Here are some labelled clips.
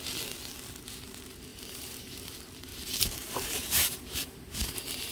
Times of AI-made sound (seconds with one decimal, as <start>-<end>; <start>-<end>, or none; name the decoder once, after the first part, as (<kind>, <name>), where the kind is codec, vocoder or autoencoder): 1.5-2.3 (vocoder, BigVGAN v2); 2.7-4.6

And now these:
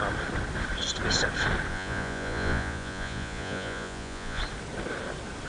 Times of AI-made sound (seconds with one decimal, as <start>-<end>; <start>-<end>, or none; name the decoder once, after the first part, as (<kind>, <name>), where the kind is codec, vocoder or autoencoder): 1.7-4.4 (vocoder, Vocos)

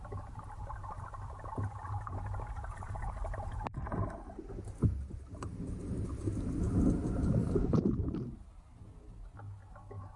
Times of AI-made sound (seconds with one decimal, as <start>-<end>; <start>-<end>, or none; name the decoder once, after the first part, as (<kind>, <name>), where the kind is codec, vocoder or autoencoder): 2.7-4.0 (vocoder, BigVGAN v2); 7.4-8.5